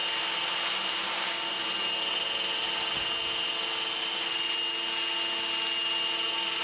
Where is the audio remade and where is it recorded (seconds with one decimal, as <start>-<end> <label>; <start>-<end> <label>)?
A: 0.0-6.6 recorded